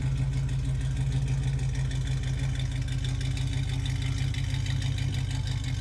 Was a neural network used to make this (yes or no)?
no